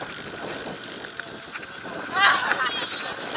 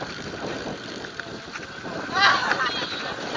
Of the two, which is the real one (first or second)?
first